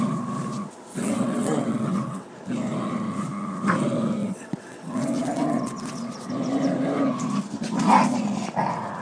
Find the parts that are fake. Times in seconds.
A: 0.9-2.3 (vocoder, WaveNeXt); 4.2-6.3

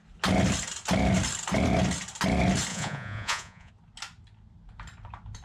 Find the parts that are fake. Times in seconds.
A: 2.7-3.7 (vocoder, Vocos)

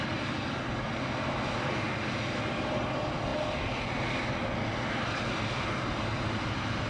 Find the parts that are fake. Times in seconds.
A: none

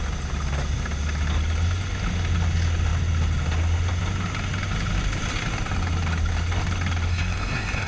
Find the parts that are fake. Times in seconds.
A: 7.1-7.9 (codec, SNAC)

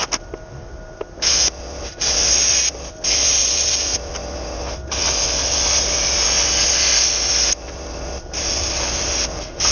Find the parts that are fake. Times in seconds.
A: none

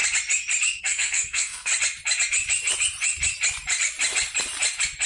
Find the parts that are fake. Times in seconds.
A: 0.8-1.7 (codec, SNAC)

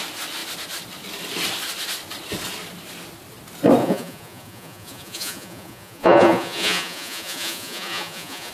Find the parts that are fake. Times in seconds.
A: 3.8-8.5 (vocoder, Vocos)